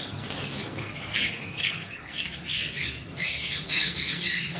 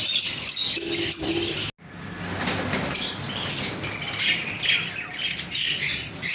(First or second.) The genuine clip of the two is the second